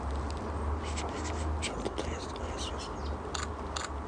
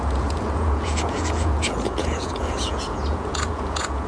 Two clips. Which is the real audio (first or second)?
first